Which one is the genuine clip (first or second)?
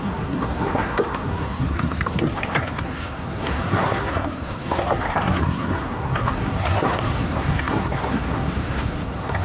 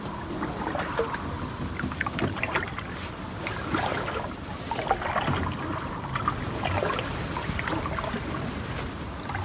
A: second